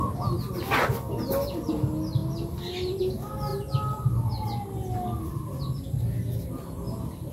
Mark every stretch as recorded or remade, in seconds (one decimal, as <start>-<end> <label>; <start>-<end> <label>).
0.0-7.3 recorded